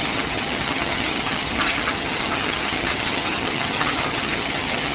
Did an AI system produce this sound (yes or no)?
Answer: yes